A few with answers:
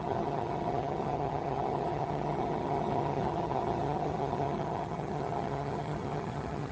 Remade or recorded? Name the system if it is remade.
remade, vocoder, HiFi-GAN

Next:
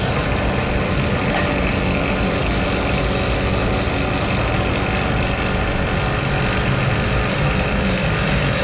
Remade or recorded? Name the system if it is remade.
recorded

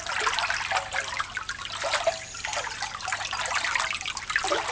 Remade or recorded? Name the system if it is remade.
recorded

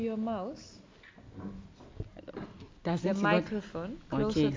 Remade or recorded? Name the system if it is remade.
recorded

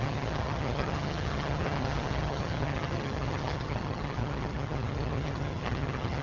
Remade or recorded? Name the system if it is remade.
remade, vocoder, HiFi-GAN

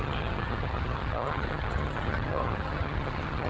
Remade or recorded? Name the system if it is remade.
remade, vocoder, HiFi-GAN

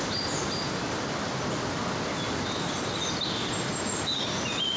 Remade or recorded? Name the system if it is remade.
recorded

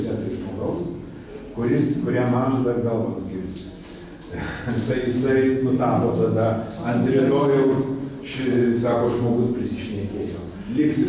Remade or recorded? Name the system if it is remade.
recorded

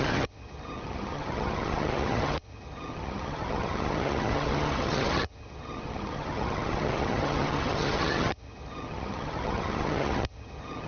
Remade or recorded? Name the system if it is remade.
remade, vocoder, HiFi-GAN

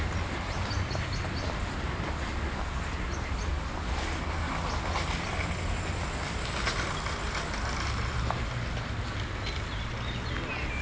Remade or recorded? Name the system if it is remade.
recorded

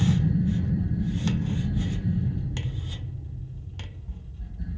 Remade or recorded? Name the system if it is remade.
recorded